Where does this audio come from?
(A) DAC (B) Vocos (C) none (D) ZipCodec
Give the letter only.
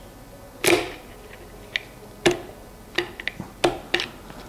C